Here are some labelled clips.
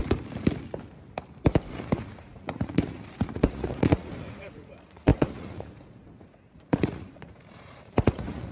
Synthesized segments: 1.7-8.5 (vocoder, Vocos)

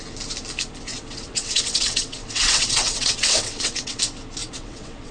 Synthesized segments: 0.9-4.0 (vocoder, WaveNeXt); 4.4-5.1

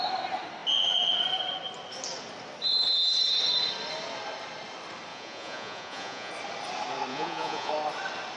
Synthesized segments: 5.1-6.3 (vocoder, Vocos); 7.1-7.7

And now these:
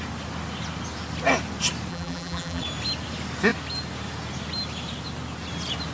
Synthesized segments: 1.9-2.6 (vocoder, BigVGAN v2)

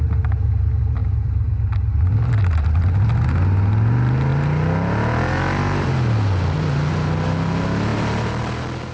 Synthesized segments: none

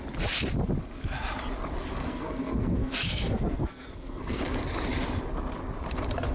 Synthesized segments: 2.0-4.4 (codec, SNAC)